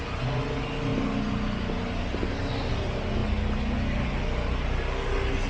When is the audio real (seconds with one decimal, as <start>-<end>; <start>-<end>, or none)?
0.0-5.5